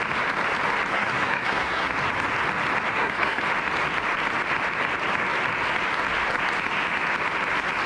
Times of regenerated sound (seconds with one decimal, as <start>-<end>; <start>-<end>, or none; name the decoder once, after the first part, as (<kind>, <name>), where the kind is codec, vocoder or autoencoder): 0.9-1.9 (codec, SNAC); 2.9-3.4